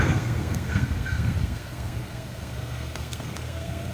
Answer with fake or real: fake